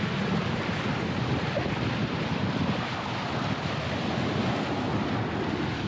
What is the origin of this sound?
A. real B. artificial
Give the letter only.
A